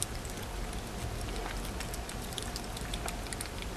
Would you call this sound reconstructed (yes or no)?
no